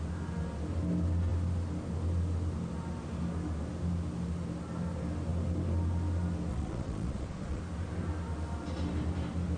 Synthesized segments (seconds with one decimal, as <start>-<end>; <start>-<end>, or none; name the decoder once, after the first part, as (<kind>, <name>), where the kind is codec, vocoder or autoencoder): 6.5-7.6 (vocoder, Vocos)